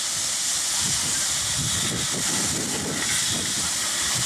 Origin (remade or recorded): recorded